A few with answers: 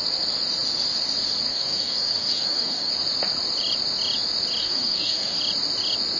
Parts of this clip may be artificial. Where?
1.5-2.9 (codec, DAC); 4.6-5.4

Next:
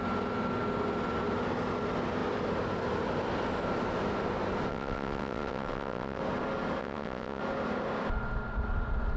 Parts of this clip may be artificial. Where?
4.7-6.2 (vocoder, WaveNeXt); 6.8-7.4

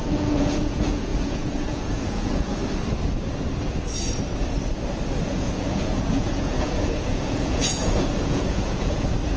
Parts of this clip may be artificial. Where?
0.0-2.6 (vocoder, Vocos); 5.2-9.4

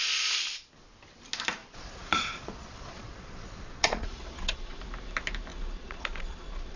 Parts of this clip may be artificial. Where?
1.6-4.8 (vocoder, Vocos); 5.5-6.8

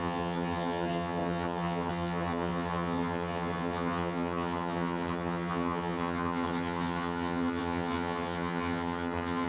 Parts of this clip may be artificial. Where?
0.0-9.5 (vocoder, HiFi-GAN)